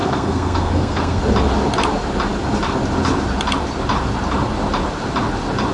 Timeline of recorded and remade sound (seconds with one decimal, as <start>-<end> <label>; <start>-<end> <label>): 0.0-1.2 remade; 1.2-5.7 recorded